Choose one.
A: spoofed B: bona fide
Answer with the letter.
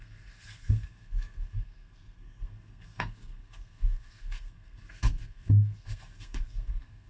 A